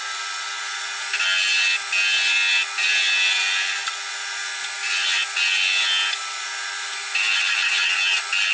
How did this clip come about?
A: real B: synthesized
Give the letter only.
A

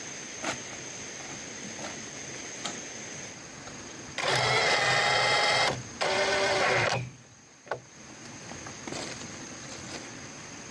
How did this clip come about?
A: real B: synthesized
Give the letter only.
A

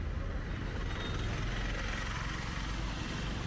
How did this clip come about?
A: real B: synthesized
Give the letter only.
A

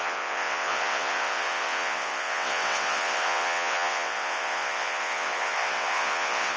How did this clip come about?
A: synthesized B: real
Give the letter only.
A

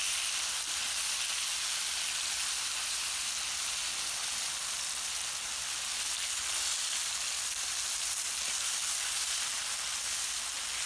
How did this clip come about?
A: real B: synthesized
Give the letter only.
A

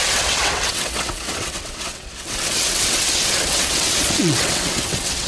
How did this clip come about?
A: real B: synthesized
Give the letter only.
B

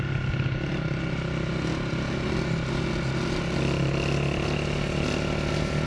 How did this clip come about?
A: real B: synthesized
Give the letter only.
A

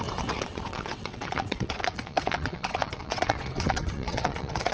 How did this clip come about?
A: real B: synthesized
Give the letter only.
B